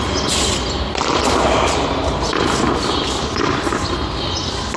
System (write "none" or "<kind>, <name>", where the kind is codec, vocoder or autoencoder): none